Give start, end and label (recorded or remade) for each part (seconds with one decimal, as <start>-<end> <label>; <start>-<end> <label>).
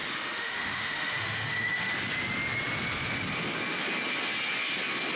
0.0-1.9 remade; 1.9-5.2 recorded